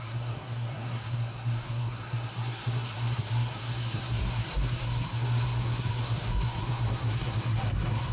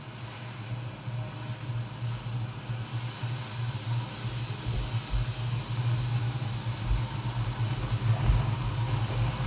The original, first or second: second